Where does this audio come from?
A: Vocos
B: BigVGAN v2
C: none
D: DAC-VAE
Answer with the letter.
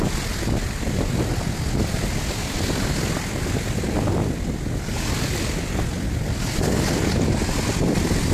C